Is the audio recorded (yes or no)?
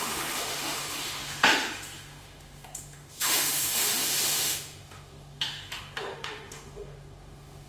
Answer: no